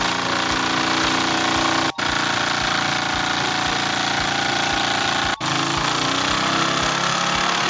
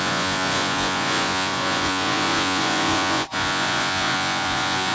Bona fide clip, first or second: first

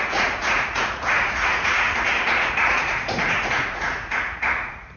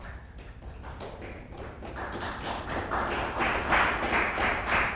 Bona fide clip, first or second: second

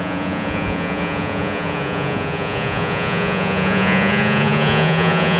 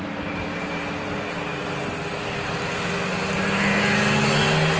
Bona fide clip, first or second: second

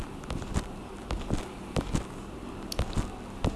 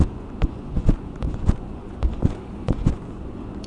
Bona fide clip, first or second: first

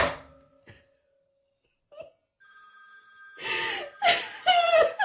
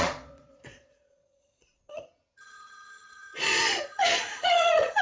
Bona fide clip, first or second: first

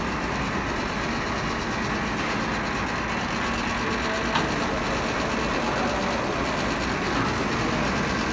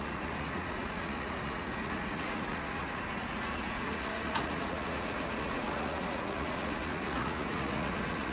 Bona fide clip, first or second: first